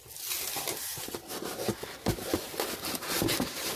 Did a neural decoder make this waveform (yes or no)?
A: no